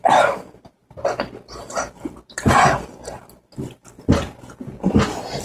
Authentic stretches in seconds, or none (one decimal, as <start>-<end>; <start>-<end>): 3.2-5.4